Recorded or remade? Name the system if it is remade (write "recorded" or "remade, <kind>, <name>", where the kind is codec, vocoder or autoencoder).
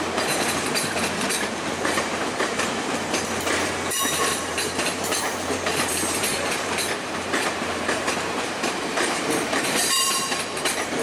remade, vocoder, BigVGAN v2